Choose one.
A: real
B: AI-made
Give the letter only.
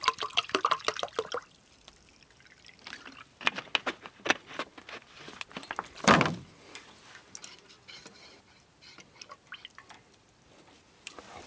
A